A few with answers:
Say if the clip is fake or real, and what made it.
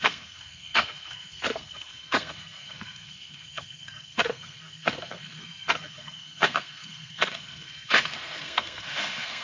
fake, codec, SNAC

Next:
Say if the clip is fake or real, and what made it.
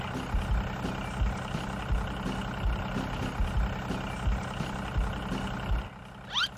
real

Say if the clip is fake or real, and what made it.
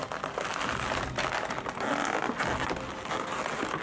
real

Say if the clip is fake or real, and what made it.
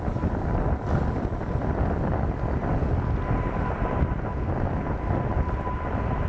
real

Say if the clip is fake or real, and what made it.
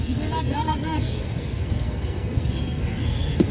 fake, codec, SNAC